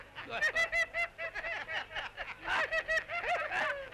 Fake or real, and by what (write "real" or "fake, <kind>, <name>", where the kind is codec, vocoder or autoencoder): real